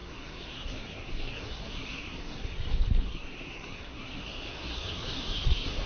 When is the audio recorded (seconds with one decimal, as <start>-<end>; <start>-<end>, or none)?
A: none